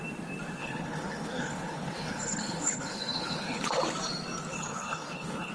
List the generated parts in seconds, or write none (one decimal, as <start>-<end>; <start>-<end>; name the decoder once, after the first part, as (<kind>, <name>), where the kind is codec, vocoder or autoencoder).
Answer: 0.6-3.7 (codec, HILCodec); 4.5-5.5